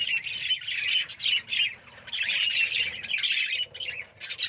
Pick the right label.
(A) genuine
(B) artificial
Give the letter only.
A